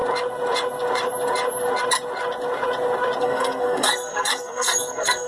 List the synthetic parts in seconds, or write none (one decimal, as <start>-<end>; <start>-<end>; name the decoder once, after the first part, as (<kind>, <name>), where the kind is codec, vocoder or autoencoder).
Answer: 3.2-5.3 (codec, SNAC)